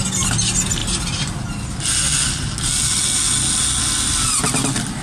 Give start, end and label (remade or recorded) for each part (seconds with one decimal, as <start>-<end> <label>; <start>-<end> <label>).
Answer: 0.0-5.0 recorded